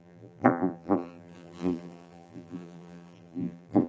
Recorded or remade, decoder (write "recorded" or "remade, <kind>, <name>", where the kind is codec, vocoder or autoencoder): remade, vocoder, BigVGAN v2